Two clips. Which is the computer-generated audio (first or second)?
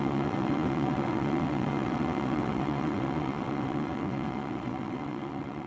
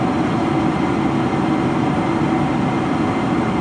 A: first